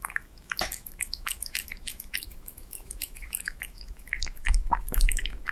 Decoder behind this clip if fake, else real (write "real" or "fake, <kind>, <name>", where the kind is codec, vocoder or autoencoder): fake, autoencoder, DAC-VAE